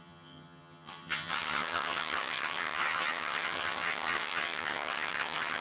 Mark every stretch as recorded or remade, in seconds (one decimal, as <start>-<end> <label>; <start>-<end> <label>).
0.0-5.6 remade